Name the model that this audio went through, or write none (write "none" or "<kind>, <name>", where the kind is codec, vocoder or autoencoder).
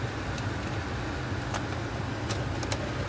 none